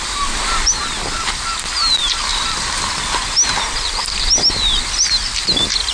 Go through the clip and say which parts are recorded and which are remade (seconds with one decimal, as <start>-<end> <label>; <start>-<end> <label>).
0.0-5.9 recorded

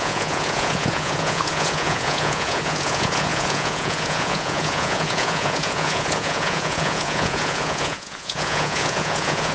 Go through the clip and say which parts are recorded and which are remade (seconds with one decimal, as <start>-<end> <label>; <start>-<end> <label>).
0.0-9.5 remade